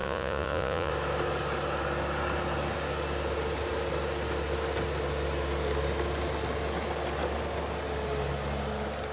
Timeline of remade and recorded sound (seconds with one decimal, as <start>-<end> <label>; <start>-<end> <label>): 0.0-0.9 remade; 0.9-9.1 recorded